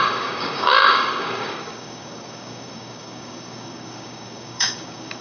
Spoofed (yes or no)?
yes